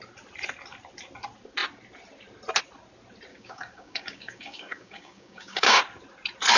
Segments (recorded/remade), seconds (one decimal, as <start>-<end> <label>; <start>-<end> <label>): 0.0-3.3 recorded; 3.3-5.8 remade; 5.8-6.6 recorded